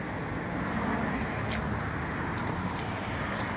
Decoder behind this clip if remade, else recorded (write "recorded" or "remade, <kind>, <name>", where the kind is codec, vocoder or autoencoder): recorded